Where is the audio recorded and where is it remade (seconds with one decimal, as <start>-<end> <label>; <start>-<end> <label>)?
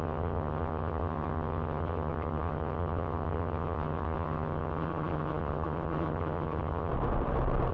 0.0-6.9 remade; 6.9-7.7 recorded